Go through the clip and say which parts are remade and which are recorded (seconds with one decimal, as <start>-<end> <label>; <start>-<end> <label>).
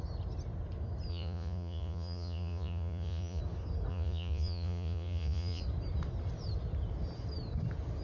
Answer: 0.0-1.1 recorded; 1.1-3.4 remade; 3.4-3.9 recorded; 3.9-5.6 remade; 5.6-8.0 recorded